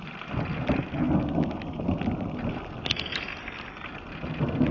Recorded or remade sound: recorded